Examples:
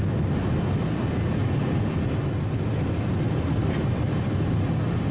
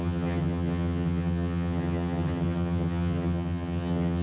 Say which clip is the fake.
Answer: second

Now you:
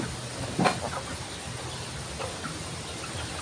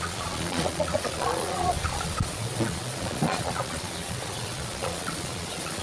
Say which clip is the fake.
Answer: second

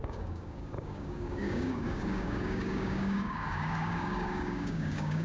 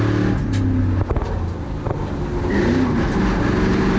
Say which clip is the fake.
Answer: first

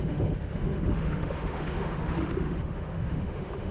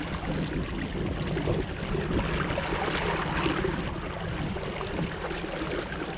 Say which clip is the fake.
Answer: first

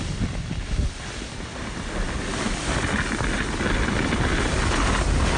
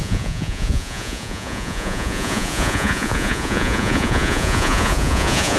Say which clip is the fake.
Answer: second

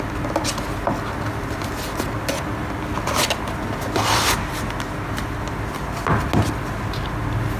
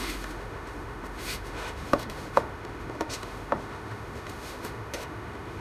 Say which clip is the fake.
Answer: second